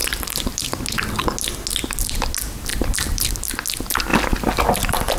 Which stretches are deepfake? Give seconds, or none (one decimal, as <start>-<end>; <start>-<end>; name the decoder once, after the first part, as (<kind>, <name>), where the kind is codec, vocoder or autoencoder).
0.0-0.6 (vocoder, BigVGAN v2); 2.7-3.5